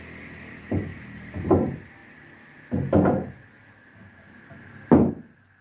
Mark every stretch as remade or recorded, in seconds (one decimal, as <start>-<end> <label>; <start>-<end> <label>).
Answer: 0.0-0.5 recorded; 0.5-1.3 remade; 1.3-5.6 recorded